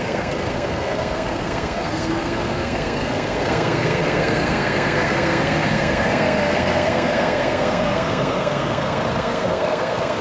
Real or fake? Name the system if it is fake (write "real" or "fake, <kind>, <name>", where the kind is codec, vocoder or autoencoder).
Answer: fake, codec, SNAC